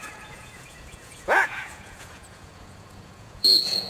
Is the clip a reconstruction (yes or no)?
yes